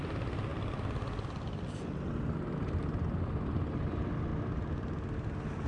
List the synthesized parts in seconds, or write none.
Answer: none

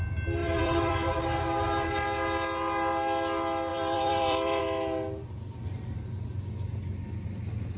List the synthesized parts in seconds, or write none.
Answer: 0.4-1.2 (vocoder, BigVGAN v2); 3.7-4.6

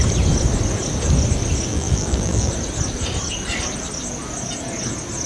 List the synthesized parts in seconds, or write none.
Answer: 1.7-2.5 (vocoder, BigVGAN v2)

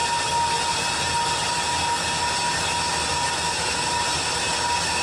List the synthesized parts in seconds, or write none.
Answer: none

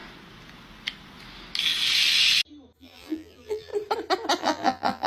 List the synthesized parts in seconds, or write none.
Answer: 2.8-3.7 (vocoder, BigVGAN v2); 4.4-5.1

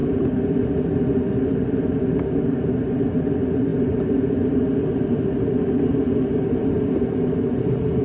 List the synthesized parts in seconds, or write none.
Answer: 0.0-1.4 (vocoder, BigVGAN v2); 3.7-6.0

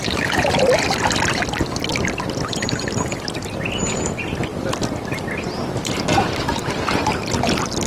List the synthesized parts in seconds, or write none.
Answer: 1.9-3.4 (vocoder, BigVGAN v2); 4.5-5.1

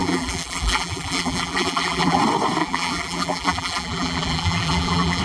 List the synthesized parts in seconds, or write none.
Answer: 0.0-2.2 (vocoder, BigVGAN v2); 2.6-5.2